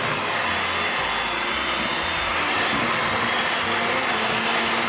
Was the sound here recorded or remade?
recorded